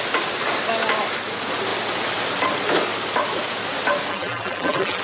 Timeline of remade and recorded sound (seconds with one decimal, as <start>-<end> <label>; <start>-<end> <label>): 0.0-4.1 recorded; 4.1-5.0 remade